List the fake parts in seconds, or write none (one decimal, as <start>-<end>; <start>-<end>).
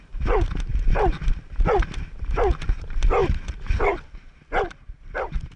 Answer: none